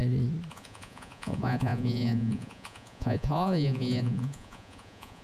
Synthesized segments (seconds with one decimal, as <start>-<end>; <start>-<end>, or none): 0.5-5.2